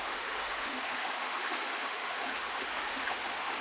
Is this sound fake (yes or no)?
yes